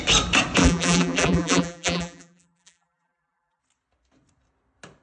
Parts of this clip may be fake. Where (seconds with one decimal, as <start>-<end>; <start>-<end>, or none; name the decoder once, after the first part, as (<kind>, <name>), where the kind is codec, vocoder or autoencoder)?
0.6-3.6 (vocoder, BigVGAN v2)